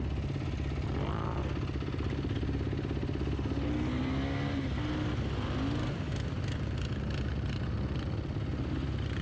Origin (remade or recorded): recorded